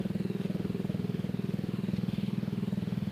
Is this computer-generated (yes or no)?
yes